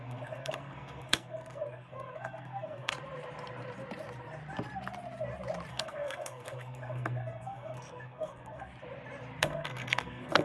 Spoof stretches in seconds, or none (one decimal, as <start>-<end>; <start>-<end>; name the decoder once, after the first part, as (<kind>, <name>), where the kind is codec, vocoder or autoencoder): 0.0-2.9 (codec, SNAC); 5.7-8.7; 9.4-10.4